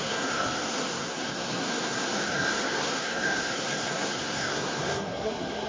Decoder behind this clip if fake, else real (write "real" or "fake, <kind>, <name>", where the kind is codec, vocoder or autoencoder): fake, codec, SNAC